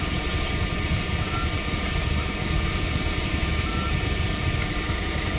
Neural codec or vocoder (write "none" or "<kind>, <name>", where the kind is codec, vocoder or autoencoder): none